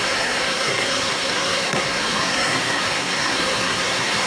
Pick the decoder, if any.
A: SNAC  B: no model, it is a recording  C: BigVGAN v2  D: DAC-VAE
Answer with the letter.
A